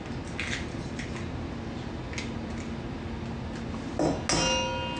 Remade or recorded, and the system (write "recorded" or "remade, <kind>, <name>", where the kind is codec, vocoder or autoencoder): recorded